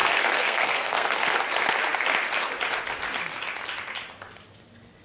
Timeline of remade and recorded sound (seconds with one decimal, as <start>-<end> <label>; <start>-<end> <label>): 0.0-1.4 remade; 1.4-5.0 recorded